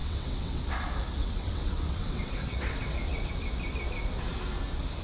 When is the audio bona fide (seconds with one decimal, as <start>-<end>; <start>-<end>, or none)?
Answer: 0.6-1.2; 3.3-5.0